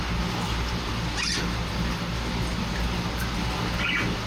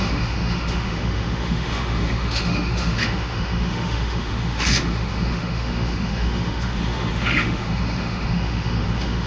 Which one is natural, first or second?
first